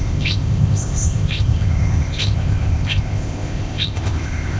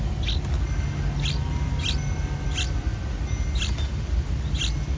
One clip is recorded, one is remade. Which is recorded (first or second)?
second